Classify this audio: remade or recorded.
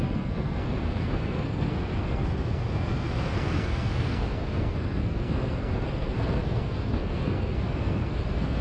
remade